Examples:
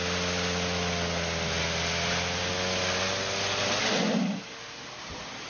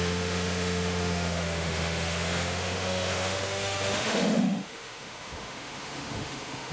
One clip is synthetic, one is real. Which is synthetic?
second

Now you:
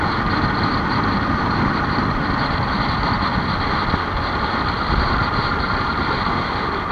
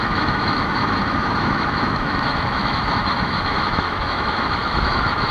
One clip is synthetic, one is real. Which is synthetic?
second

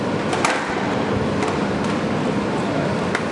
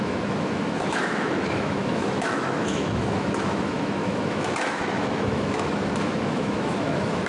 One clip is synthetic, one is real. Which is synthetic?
second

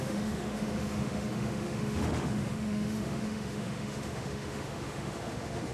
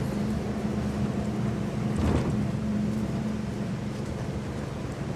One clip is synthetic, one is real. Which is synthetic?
first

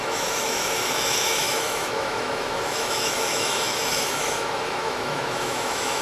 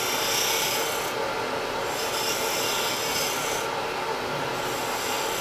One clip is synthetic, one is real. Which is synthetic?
first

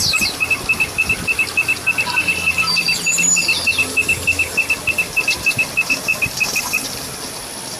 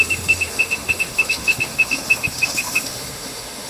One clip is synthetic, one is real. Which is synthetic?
second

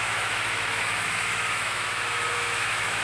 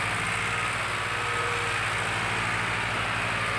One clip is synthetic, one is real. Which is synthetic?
first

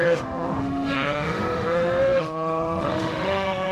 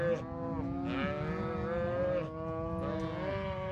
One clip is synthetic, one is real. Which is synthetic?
first